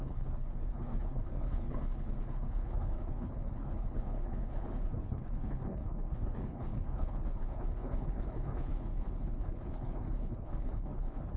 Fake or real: fake